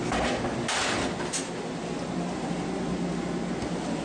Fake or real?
real